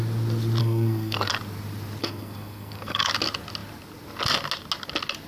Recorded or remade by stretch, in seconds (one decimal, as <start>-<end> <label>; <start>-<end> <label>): 0.0-0.6 recorded; 0.6-1.3 remade; 1.3-2.0 recorded; 2.0-3.1 remade; 3.1-5.3 recorded